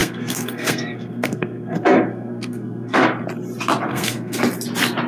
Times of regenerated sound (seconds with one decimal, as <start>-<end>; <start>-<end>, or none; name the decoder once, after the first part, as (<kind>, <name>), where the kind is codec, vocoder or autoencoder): 0.0-3.1 (codec, SNAC); 3.9-4.4